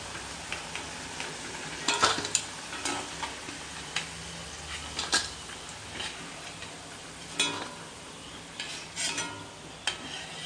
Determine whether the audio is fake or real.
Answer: real